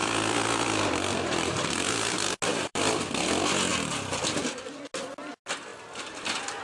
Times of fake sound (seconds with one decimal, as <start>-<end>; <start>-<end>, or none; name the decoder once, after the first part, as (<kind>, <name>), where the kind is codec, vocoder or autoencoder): 0.0-1.5 (vocoder, BigVGAN v2); 2.5-3.1; 5.7-6.6